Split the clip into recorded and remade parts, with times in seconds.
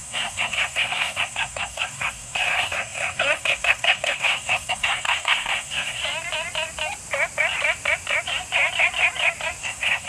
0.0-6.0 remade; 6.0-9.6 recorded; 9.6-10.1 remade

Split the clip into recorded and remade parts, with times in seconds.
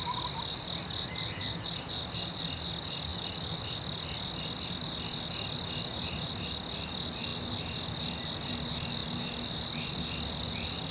0.0-10.9 recorded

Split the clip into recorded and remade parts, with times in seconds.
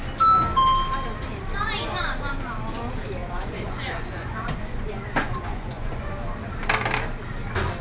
0.0-3.2 recorded; 3.2-6.1 remade; 6.1-7.8 recorded